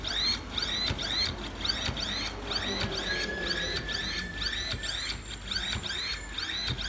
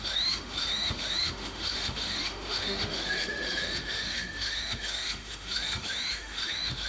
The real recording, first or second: first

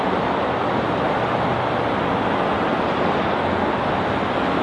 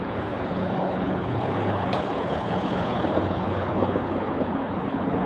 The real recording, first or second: first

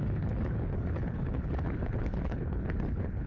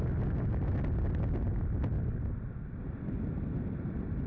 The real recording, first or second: second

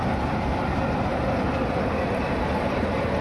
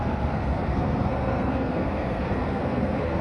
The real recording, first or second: first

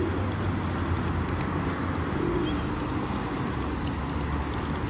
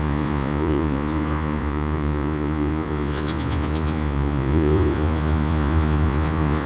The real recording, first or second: first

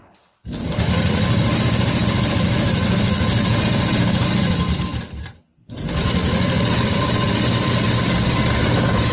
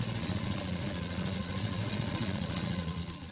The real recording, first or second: first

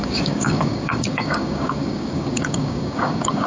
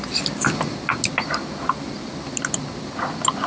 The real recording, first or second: second